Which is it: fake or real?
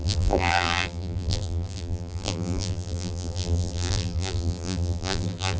fake